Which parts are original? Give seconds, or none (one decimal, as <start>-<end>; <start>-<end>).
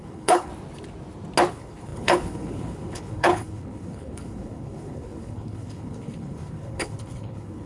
0.5-1.5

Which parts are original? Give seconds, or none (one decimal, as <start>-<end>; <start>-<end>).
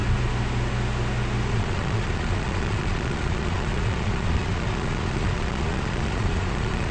0.0-1.5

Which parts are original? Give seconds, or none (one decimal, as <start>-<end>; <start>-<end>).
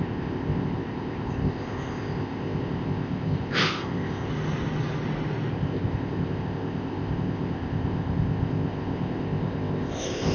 4.3-5.5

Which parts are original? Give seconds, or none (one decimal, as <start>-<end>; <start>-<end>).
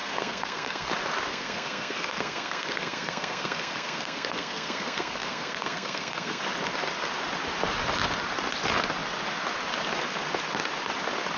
0.9-1.3; 6.4-11.4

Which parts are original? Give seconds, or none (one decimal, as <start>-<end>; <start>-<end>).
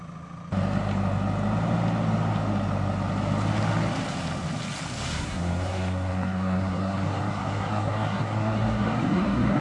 0.0-5.1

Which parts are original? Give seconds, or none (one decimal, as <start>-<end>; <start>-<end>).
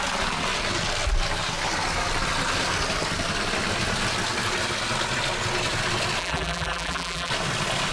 0.0-6.2; 7.3-7.9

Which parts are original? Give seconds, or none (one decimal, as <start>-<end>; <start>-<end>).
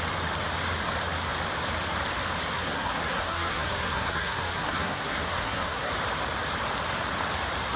0.0-2.5; 5.9-7.8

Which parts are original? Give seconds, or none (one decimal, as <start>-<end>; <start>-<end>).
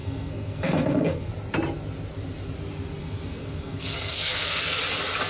1.3-3.0; 4.7-5.3